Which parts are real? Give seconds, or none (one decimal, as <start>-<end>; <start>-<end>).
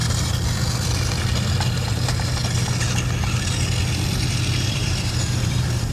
0.0-1.8; 2.4-4.6